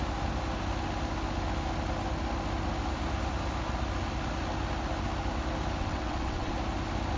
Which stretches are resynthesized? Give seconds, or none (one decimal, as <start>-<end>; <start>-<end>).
5.8-6.5